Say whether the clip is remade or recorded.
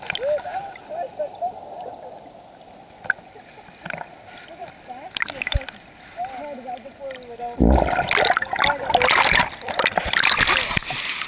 recorded